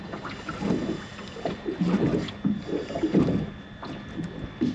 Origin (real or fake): real